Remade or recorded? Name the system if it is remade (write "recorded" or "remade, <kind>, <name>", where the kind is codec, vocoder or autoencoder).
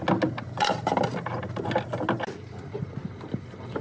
recorded